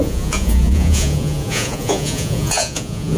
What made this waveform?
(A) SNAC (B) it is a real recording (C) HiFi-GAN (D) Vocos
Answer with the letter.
D